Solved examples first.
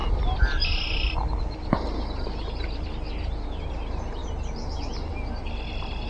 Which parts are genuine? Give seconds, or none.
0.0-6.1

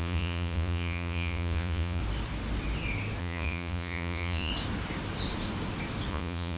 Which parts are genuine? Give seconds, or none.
2.0-3.2; 4.5-6.1

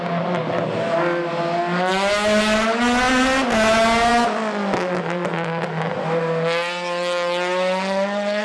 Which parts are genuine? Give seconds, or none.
0.0-8.4

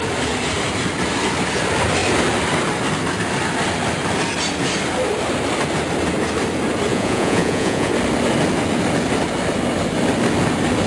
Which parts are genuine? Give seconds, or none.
0.0-6.9; 7.9-10.9

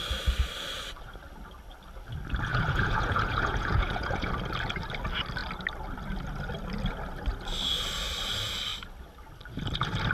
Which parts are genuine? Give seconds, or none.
0.0-2.5; 4.3-10.1